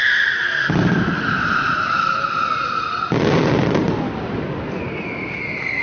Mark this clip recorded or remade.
recorded